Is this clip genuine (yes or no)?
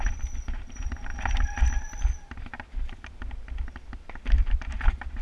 yes